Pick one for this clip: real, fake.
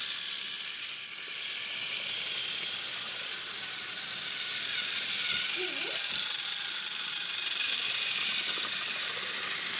real